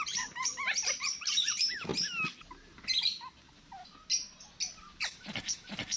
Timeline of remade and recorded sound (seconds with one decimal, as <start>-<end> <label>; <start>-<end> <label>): 0.0-1.9 remade; 1.9-5.0 recorded; 5.0-6.0 remade